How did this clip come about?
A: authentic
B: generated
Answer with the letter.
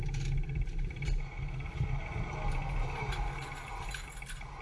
A